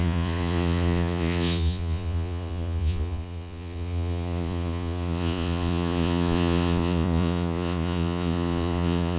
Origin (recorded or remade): remade